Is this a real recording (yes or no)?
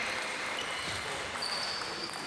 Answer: yes